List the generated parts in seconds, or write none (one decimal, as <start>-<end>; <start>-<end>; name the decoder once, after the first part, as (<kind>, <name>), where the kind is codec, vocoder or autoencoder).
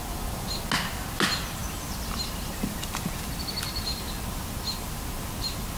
none